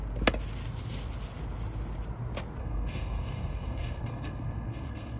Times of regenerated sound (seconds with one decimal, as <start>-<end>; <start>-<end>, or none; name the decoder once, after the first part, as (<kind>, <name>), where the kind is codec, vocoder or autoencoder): 2.6-5.2 (codec, SNAC)